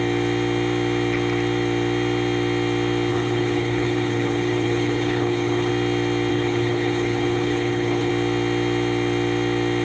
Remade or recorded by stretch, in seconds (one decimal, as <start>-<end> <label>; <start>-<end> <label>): 0.0-3.1 recorded; 3.1-5.7 remade; 5.7-6.3 recorded; 6.3-8.1 remade; 8.1-9.8 recorded